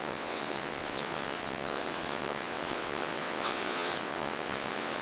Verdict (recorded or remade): remade